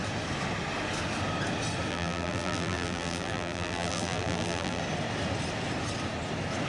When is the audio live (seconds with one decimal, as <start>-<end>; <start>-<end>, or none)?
0.0-1.9; 4.8-6.7